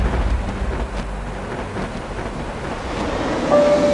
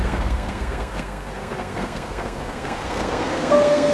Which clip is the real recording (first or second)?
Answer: first